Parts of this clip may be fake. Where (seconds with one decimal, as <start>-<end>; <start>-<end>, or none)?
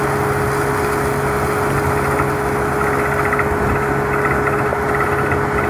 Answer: none